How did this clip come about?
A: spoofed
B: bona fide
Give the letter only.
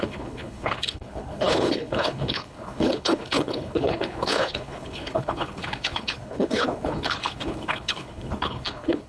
A